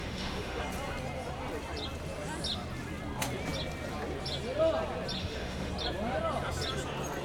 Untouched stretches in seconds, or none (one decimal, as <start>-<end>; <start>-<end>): 0.6-5.2; 5.7-7.2